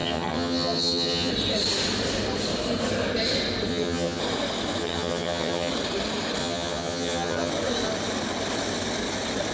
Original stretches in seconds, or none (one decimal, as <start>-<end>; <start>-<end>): 1.3-3.7; 4.2-4.8; 5.7-6.4; 7.5-9.5